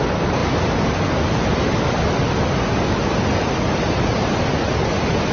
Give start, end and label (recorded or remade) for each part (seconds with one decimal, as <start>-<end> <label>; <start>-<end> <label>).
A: 0.0-5.3 recorded